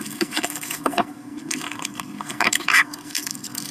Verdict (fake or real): fake